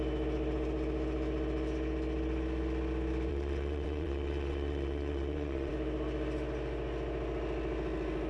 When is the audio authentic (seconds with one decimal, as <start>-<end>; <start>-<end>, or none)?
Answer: 0.0-3.3; 5.7-8.3